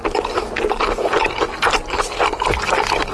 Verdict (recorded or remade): recorded